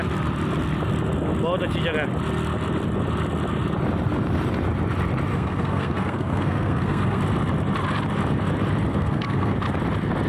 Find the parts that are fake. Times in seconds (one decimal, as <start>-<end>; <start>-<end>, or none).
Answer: 5.3-7.2; 8.9-9.5